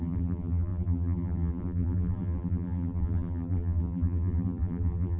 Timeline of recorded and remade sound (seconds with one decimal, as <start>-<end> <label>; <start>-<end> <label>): 0.0-5.2 remade